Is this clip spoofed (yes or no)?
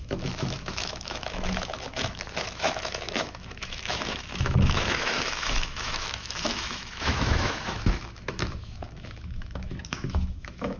yes